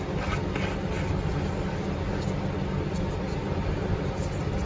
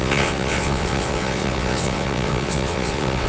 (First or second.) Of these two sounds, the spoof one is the second